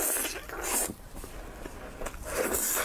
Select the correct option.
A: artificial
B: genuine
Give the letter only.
B